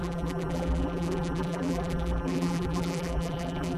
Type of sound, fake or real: fake